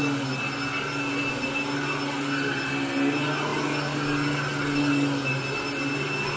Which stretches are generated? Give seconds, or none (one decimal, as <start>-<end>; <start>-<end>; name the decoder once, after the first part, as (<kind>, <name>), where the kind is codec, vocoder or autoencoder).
none